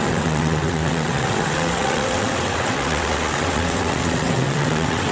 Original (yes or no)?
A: no